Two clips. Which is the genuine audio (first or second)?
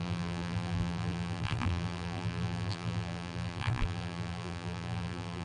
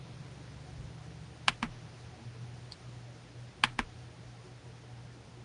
second